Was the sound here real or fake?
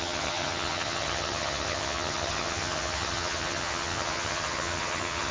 fake